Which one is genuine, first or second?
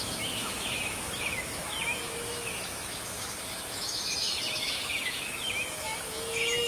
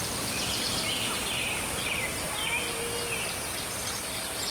second